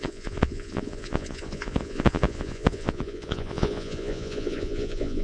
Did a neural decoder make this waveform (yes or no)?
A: yes